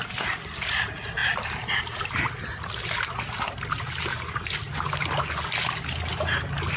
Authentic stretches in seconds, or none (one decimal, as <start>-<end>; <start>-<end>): 0.0-6.8